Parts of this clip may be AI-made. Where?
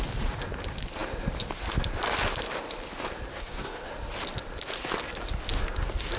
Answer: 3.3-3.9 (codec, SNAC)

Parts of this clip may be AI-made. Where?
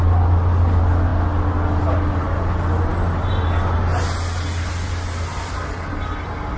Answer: none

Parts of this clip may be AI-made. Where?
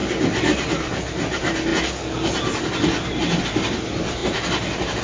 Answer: none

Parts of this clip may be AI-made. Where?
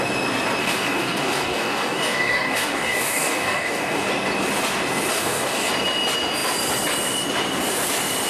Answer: 0.6-4.1 (codec, DAC); 5.1-5.7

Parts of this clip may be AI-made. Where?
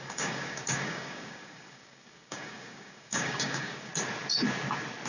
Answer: 0.0-3.9 (codec, DAC)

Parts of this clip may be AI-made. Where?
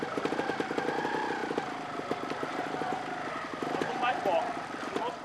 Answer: none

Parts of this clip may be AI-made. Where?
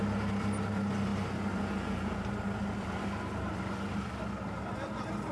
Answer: none